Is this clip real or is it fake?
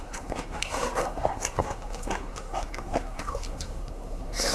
fake